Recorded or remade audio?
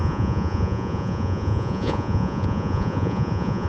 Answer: remade